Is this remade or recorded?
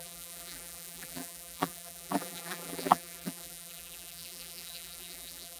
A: remade